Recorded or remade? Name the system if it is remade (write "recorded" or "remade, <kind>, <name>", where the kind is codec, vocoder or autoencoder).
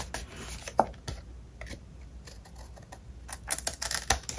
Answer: recorded